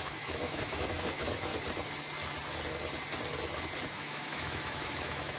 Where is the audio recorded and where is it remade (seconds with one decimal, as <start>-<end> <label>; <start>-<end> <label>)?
0.0-1.5 remade; 1.5-3.9 recorded; 3.9-5.4 remade